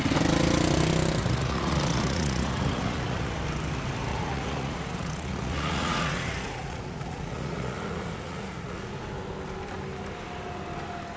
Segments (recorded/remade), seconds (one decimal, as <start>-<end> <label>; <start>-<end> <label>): 0.0-1.2 recorded; 1.2-3.4 remade; 3.4-4.1 recorded; 4.1-8.9 remade; 8.9-11.2 recorded